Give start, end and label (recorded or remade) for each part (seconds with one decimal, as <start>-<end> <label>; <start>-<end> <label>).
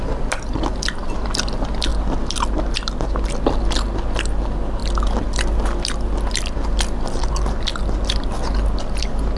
0.0-9.4 recorded